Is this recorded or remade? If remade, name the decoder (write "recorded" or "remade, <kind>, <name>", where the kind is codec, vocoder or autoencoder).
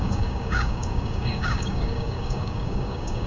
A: remade, codec, DAC